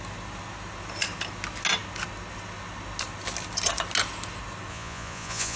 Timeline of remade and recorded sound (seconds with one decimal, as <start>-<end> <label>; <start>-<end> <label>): 0.0-4.7 recorded; 4.7-5.6 remade

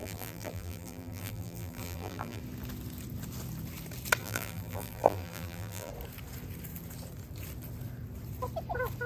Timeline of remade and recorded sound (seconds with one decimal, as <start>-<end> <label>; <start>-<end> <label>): 0.0-2.4 remade; 2.4-4.2 recorded; 4.2-5.9 remade; 5.9-9.1 recorded

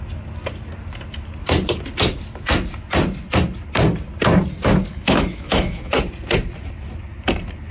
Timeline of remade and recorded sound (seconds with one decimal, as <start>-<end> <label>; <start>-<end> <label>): 0.0-4.9 recorded; 4.9-6.0 remade; 6.0-7.7 recorded

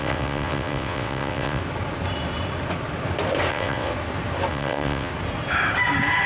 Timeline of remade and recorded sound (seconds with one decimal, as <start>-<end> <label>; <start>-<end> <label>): 0.0-1.6 remade; 1.6-3.5 recorded; 3.5-3.9 remade; 3.9-4.5 recorded; 4.5-5.1 remade; 5.1-6.3 recorded

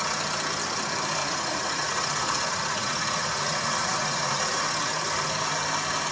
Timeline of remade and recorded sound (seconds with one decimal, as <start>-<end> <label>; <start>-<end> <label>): 0.0-1.2 recorded; 1.2-4.9 remade; 4.9-6.1 recorded

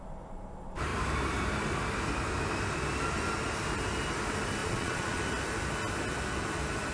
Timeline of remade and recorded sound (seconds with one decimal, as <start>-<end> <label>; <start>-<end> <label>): 0.0-4.6 recorded; 4.6-5.2 remade; 5.2-6.9 recorded

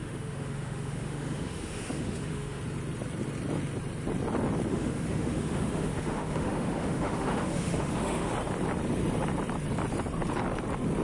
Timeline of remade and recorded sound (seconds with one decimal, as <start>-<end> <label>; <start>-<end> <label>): 0.0-2.6 remade; 2.6-4.7 recorded; 4.7-8.3 remade; 8.3-11.0 recorded